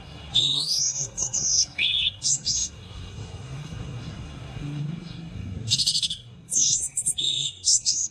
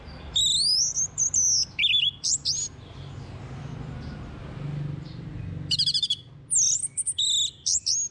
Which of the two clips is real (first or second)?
second